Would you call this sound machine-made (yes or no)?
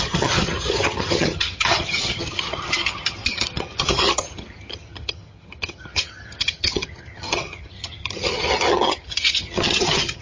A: yes